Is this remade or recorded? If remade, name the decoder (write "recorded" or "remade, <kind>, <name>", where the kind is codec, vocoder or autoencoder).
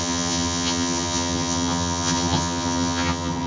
remade, vocoder, HiFi-GAN